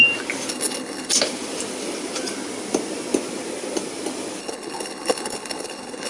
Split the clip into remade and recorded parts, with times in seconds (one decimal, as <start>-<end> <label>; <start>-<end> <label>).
0.0-0.5 recorded; 0.5-1.1 remade; 1.1-4.4 recorded; 4.4-6.1 remade